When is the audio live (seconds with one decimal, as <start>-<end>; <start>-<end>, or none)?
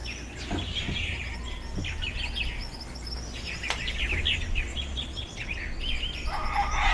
0.0-4.7; 5.8-6.9